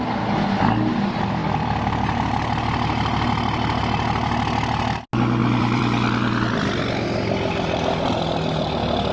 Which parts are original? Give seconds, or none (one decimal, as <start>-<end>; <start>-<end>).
0.0-1.4; 3.8-5.4; 6.8-9.1